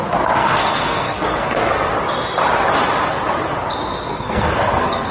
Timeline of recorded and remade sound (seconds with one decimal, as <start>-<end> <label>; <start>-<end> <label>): 0.0-0.4 recorded; 0.4-1.9 remade; 1.9-4.1 recorded; 4.1-5.1 remade